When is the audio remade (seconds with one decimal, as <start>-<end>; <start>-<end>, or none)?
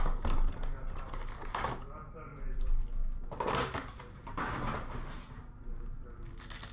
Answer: none